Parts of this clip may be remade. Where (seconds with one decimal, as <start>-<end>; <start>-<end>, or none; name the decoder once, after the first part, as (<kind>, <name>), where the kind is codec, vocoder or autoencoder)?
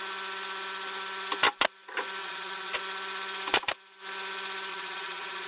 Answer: 2.2-2.8 (vocoder, Vocos); 4.7-5.5